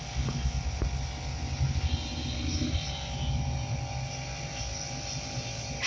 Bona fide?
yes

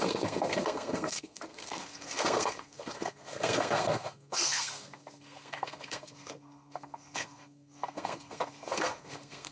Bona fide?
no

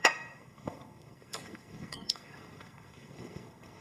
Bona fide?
no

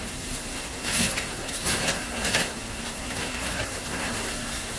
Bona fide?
no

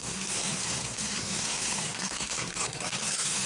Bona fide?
no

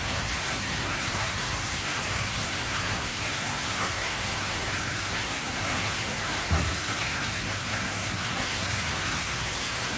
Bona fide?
no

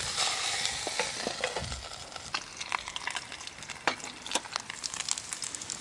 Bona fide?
yes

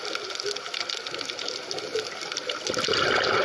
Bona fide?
yes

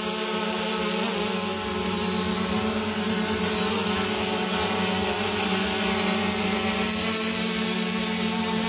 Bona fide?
yes